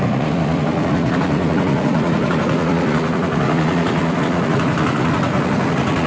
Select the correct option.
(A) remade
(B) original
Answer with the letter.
A